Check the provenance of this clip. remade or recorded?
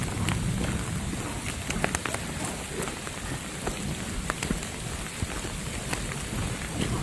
recorded